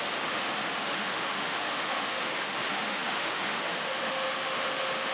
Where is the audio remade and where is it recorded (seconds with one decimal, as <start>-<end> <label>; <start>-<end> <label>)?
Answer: 0.0-5.1 remade